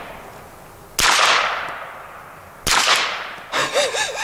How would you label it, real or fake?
real